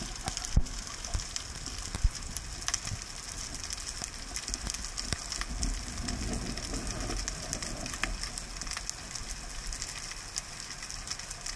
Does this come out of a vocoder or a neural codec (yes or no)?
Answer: no